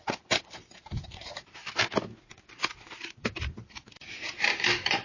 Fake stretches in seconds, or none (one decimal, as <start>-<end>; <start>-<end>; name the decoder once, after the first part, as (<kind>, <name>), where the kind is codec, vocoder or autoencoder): 0.0-1.6 (vocoder, BigVGAN v2); 2.2-5.0